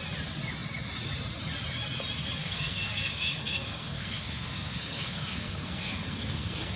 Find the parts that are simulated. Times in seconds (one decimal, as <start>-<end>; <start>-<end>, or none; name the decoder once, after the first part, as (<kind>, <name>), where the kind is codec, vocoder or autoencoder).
2.4-6.8 (codec, SNAC)